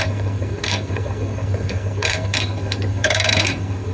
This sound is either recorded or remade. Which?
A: remade